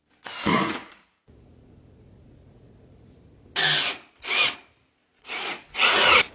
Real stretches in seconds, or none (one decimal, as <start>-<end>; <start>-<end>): 0.0-0.5; 3.5-5.0